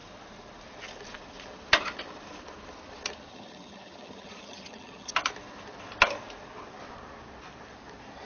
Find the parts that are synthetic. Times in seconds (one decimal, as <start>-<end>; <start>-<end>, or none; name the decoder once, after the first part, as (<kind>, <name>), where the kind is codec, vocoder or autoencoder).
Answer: 3.3-5.1 (vocoder, HiFi-GAN)

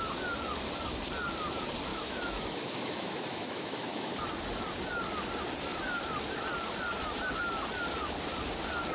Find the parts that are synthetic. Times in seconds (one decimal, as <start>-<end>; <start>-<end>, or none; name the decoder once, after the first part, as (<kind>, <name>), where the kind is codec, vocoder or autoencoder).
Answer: 1.9-4.1 (autoencoder, DAC-VAE)

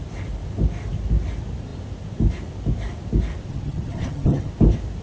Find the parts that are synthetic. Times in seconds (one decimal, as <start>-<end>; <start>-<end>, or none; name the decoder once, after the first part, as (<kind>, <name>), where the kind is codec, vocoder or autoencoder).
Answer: 3.5-4.5 (vocoder, HiFi-GAN)

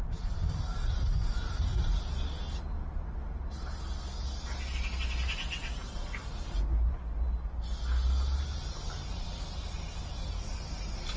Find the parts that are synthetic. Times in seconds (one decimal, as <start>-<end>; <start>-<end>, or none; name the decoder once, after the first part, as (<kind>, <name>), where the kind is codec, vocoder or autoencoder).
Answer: none